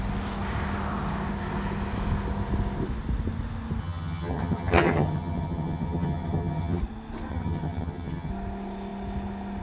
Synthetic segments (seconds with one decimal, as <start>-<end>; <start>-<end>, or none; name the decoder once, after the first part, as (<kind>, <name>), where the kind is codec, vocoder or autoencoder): 3.8-6.8 (vocoder, HiFi-GAN); 7.3-8.3